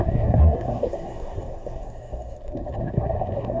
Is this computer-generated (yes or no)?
yes